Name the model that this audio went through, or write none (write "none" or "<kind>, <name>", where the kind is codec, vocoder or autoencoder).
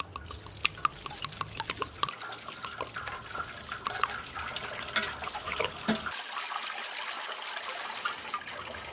none